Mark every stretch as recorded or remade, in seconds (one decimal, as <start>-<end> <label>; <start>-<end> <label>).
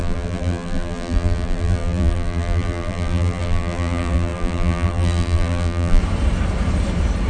0.0-6.0 remade; 6.0-7.3 recorded